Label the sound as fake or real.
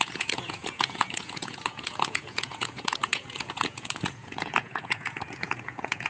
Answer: fake